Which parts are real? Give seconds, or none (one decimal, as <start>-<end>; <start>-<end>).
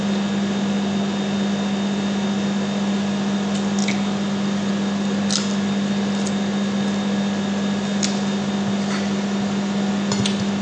0.0-10.6